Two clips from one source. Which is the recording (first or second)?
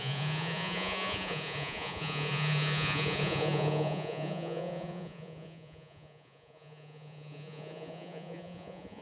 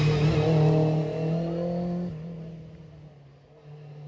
second